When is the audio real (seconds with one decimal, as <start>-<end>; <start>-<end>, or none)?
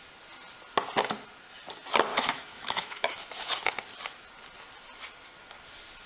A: 0.0-2.1; 3.1-6.1